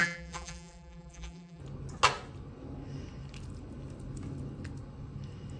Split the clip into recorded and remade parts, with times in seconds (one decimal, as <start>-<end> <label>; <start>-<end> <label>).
0.0-1.6 remade; 1.6-5.6 recorded